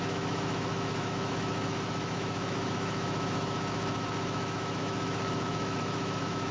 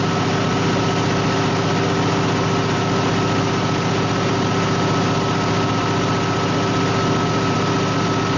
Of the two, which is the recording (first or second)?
second